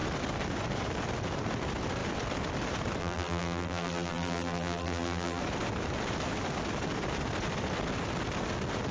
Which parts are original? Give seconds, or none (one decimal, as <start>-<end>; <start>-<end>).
0.0-3.0; 5.4-8.9